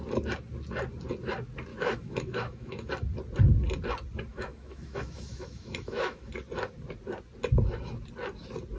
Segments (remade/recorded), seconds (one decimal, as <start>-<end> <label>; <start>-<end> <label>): 0.0-1.7 recorded; 1.7-2.9 remade; 2.9-4.3 recorded; 4.3-6.3 remade; 6.3-8.8 recorded